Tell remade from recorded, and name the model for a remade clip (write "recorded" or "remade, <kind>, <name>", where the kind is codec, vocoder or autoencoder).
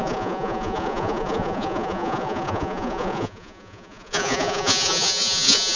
remade, vocoder, Vocos